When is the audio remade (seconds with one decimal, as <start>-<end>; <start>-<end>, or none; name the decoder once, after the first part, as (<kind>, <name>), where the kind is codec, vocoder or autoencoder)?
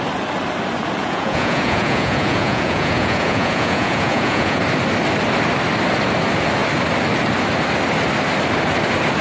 1.0-4.6 (vocoder, Vocos)